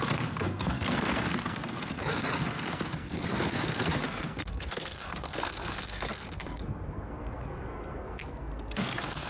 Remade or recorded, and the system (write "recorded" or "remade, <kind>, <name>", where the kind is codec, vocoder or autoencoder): remade, codec, SNAC